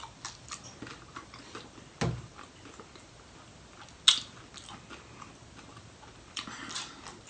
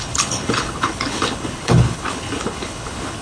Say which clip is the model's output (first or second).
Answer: second